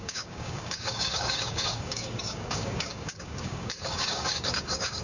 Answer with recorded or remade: remade